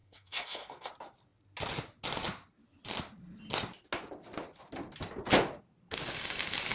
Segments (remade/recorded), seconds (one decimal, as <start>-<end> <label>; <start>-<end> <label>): 0.0-0.9 remade; 0.9-6.7 recorded